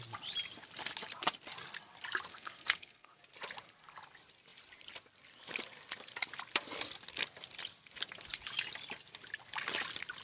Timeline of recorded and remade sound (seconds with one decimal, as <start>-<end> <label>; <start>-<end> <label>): 0.0-2.3 recorded; 2.3-3.2 remade; 3.2-10.2 recorded